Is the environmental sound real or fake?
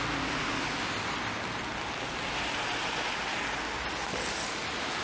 real